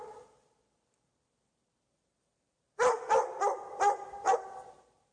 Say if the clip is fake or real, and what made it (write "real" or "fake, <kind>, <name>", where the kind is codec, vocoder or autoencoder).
fake, vocoder, BigVGAN v2